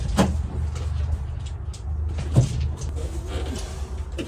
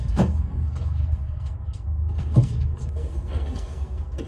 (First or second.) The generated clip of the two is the second